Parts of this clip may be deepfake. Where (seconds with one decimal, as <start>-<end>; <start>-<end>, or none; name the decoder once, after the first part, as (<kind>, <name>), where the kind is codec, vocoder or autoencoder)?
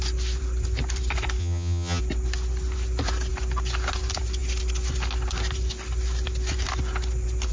1.4-2.0 (vocoder, HiFi-GAN)